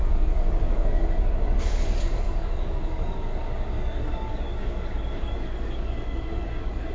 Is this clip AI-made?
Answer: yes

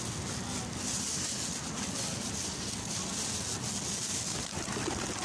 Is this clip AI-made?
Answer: no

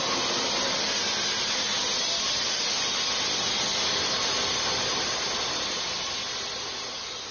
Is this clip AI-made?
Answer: no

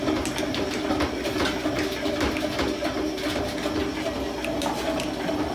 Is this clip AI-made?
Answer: no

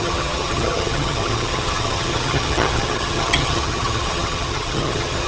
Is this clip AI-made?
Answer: yes